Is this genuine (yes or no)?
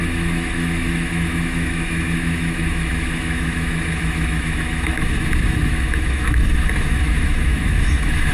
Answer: no